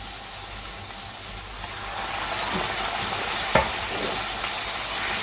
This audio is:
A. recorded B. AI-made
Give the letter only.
A